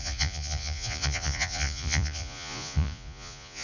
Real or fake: fake